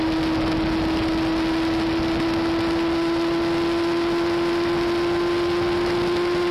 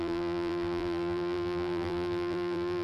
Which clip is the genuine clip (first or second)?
first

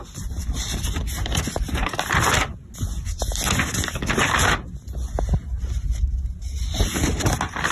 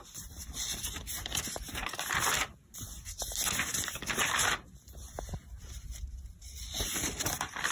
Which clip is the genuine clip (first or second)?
first